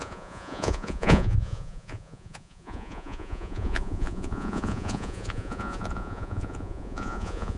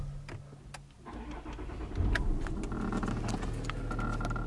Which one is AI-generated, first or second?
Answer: first